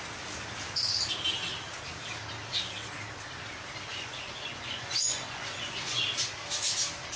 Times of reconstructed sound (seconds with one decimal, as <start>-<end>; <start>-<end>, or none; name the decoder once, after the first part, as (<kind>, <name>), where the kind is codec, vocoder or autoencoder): 3.9-6.0 (vocoder, Vocos)